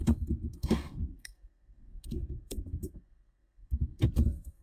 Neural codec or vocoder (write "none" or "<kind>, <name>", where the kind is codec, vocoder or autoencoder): codec, SNAC